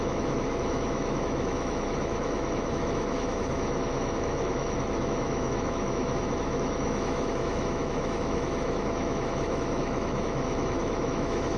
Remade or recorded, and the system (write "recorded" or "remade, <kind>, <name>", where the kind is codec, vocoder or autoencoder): remade, autoencoder, DAC-VAE